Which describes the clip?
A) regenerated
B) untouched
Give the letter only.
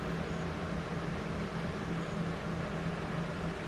B